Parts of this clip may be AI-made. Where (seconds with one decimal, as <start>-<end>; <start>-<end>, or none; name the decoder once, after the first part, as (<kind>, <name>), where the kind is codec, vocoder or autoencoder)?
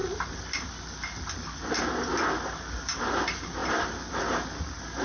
none